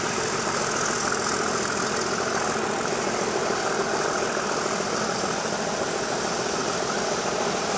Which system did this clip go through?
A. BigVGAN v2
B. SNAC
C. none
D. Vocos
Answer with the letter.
C